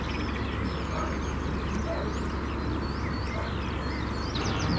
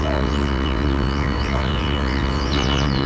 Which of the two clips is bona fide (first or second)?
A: first